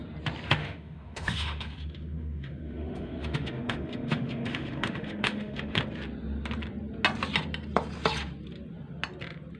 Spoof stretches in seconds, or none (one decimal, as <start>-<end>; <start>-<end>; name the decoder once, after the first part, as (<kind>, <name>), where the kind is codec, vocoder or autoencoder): 0.6-5.8 (autoencoder, DAC-VAE)